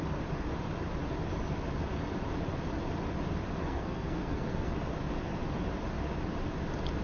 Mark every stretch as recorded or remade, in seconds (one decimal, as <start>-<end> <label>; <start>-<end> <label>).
0.0-3.6 recorded; 3.6-4.7 remade; 4.7-7.0 recorded